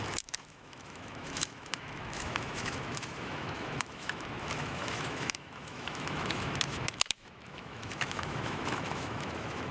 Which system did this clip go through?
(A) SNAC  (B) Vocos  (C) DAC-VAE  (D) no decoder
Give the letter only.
C